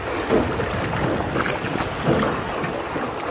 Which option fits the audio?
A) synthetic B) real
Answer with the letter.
B